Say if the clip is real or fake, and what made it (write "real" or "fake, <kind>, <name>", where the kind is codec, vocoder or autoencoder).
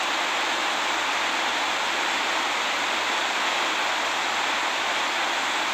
real